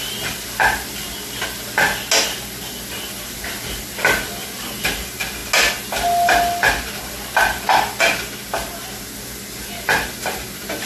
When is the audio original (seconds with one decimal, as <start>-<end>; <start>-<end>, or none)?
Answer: 0.0-10.9